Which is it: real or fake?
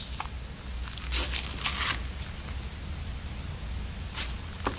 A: real